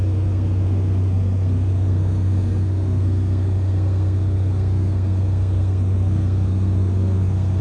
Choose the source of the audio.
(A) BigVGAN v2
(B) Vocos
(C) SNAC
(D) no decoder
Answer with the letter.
C